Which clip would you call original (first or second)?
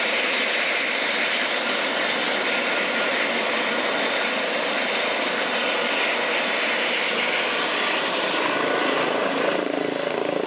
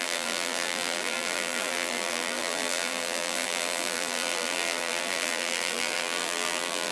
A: first